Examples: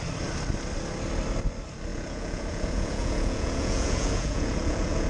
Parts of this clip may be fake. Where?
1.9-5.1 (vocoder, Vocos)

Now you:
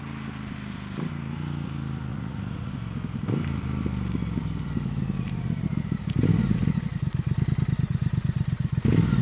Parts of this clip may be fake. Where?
2.1-2.7 (vocoder, Vocos)

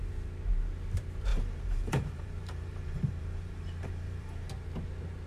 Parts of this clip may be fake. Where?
1.3-4.5 (vocoder, BigVGAN v2)

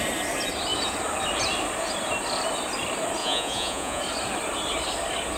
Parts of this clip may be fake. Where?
3.2-4.0 (vocoder, Vocos)

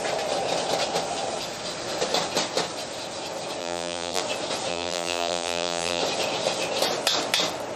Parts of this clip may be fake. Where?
3.6-4.2 (vocoder, BigVGAN v2); 4.7-6.0

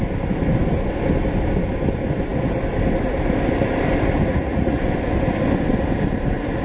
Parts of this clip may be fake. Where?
4.3-4.8 (vocoder, Vocos)

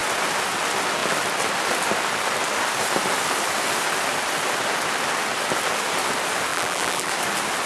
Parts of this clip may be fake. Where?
6.5-7.1 (vocoder, BigVGAN v2)